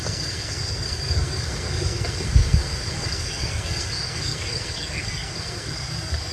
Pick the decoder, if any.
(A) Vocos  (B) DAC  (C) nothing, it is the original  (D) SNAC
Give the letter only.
D